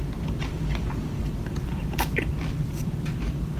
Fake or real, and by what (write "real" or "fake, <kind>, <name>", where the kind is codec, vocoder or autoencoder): fake, vocoder, BigVGAN v2